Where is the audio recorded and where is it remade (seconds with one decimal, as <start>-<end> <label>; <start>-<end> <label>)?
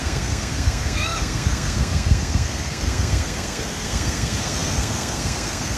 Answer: 0.0-5.8 remade